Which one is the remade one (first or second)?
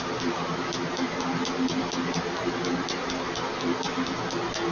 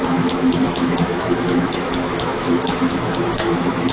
second